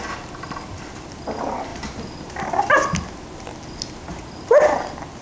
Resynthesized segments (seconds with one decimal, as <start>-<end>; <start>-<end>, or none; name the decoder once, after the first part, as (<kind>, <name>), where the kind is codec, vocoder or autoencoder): none